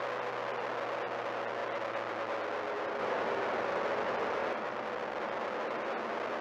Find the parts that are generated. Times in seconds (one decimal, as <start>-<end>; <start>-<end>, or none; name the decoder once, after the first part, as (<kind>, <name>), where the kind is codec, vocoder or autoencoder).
4.4-5.2 (vocoder, BigVGAN v2)